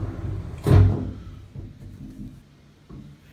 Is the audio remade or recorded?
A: recorded